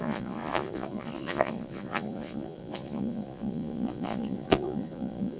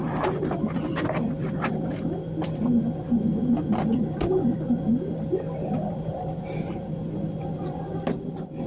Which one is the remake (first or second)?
first